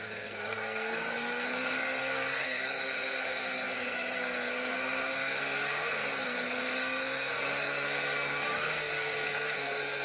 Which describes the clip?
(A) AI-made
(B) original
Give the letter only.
A